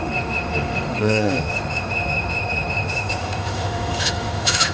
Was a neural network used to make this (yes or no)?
yes